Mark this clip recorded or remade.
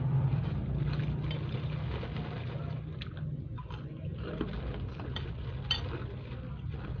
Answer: recorded